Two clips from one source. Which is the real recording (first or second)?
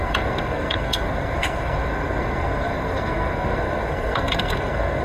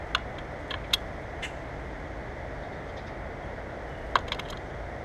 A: second